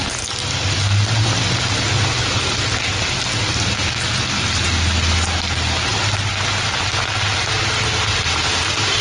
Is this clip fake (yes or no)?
no